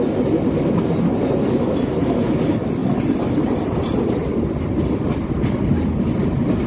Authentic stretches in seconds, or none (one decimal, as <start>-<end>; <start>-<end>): 0.0-6.7